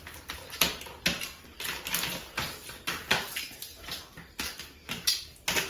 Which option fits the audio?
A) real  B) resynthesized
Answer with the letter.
A